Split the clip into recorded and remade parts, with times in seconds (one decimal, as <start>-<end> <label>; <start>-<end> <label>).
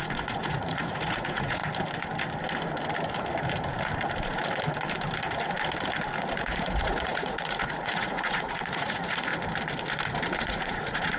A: 0.0-1.6 remade; 1.6-6.4 recorded; 6.4-9.3 remade; 9.3-10.4 recorded; 10.4-11.2 remade